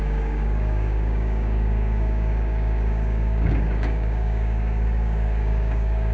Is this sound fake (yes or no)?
yes